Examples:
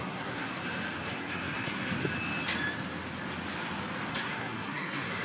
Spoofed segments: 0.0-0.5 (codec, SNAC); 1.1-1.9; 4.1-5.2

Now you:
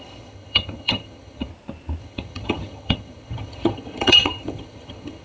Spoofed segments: 0.0-1.5 (vocoder, HiFi-GAN); 2.0-5.2

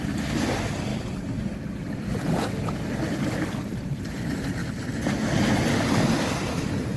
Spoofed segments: 0.0-0.9 (vocoder, BigVGAN v2); 2.7-4.6; 5.7-7.0

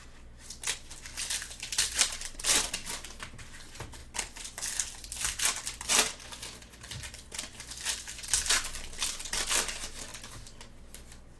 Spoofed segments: 1.1-2.7 (vocoder, BigVGAN v2); 4.0-5.9

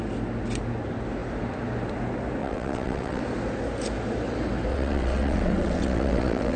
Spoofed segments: 2.4-3.2 (vocoder, WaveNeXt); 4.7-6.6

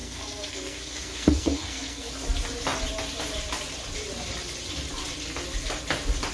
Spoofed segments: 0.0-2.1 (codec, SNAC)

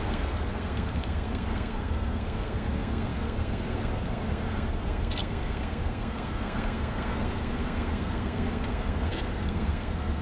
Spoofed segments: 0.0-10.2 (codec, SNAC)